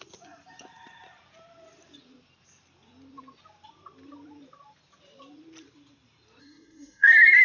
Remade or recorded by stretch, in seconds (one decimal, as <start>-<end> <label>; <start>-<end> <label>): 0.0-6.4 recorded; 6.4-7.4 remade